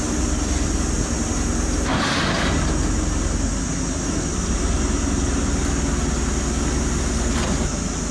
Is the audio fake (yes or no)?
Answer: no